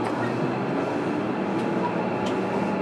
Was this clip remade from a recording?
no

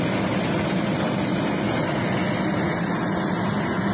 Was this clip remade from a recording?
no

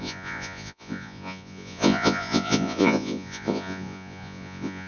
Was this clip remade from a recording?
yes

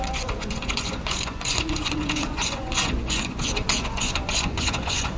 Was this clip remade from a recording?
yes